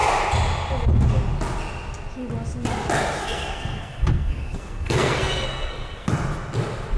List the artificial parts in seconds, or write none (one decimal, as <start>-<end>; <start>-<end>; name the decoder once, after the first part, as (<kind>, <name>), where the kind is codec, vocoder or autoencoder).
3.2-6.1 (codec, SNAC)